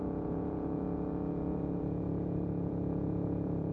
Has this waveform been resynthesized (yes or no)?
yes